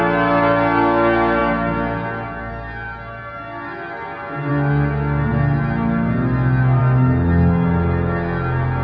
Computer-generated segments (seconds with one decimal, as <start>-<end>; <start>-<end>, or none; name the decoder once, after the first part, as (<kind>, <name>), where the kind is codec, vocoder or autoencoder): none